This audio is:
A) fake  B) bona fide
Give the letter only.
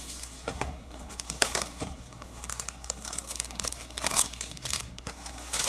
A